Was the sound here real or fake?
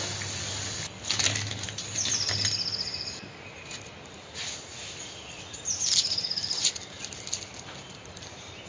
real